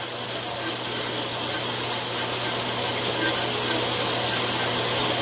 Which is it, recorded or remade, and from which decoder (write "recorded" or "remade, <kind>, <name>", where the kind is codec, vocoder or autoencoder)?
recorded